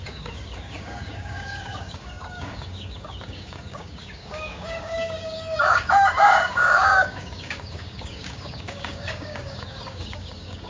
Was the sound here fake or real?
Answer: fake